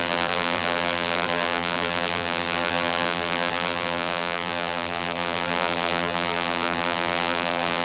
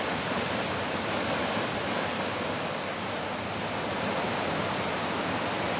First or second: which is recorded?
second